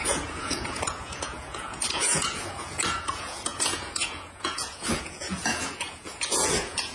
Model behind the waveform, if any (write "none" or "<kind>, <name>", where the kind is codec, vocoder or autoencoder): vocoder, Vocos